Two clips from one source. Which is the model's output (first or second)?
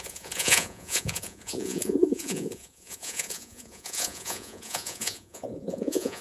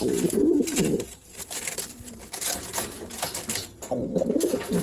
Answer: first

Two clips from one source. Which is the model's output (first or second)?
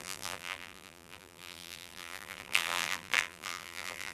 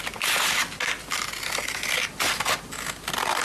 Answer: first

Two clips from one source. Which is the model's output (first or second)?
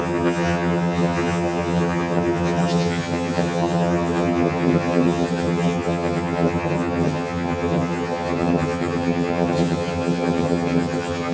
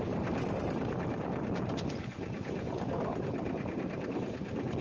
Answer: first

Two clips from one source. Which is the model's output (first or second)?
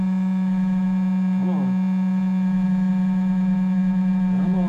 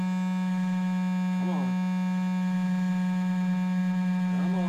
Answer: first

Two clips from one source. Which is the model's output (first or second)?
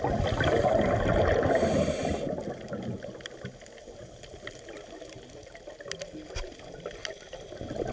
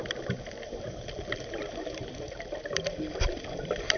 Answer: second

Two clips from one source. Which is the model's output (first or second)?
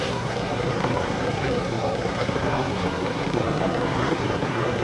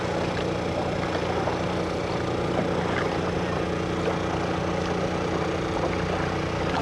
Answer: first